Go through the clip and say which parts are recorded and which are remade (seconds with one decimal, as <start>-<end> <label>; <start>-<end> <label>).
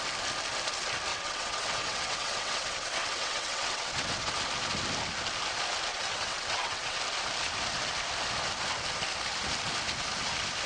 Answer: 0.0-1.1 recorded; 1.1-4.3 remade; 4.3-5.9 recorded; 5.9-7.0 remade; 7.0-10.7 recorded